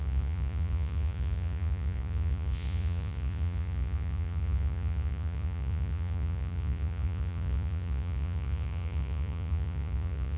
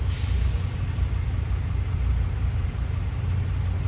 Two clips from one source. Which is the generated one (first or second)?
first